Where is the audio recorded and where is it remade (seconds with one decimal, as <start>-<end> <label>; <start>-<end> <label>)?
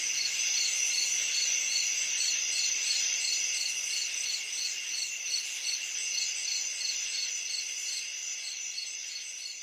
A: 0.0-6.1 remade; 6.1-7.6 recorded; 7.6-9.6 remade